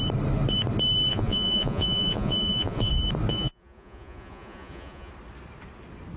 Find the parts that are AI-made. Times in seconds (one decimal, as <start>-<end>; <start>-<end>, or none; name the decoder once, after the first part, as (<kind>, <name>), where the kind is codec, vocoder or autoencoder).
1.1-2.9 (vocoder, Vocos); 3.3-5.1